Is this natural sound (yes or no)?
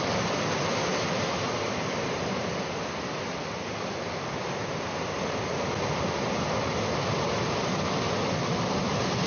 yes